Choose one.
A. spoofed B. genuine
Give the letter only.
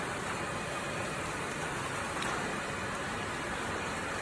B